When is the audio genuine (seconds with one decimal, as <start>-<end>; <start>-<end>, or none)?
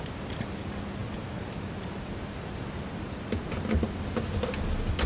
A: 0.0-5.1